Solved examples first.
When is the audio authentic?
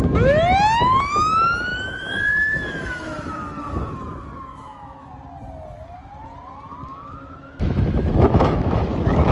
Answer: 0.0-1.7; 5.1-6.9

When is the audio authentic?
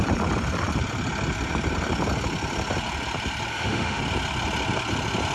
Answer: 0.0-3.5; 4.0-5.3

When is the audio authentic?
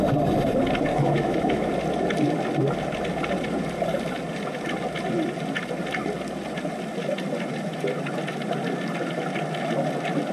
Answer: 0.0-0.9; 1.7-10.3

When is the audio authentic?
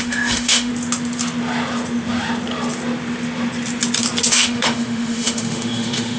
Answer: 0.7-4.3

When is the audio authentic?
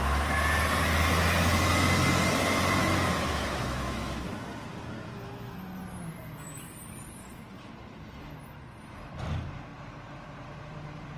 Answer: 0.0-2.8; 4.3-11.2